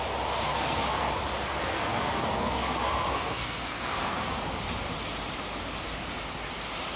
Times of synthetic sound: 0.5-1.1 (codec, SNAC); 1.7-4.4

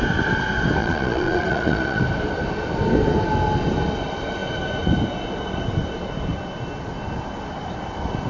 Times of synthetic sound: 0.8-2.0 (vocoder, Vocos)

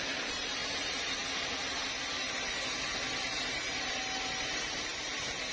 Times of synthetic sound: none

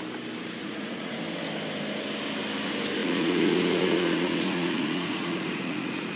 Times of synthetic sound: 0.6-1.2 (vocoder, Vocos); 3.0-6.2

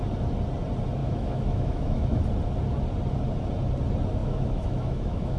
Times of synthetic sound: 1.0-2.2 (autoencoder, DAC-VAE); 4.2-5.4

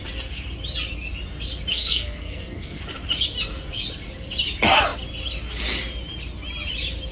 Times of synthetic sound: 1.7-2.8 (codec, SNAC)